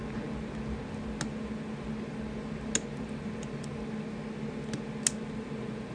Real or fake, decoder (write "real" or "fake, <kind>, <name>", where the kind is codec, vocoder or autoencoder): real